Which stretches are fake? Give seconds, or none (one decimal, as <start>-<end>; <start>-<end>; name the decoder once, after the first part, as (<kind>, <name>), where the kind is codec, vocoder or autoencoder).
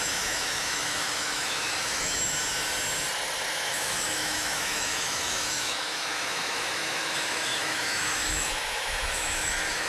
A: 0.0-2.4 (autoencoder, DAC-VAE); 3.5-9.9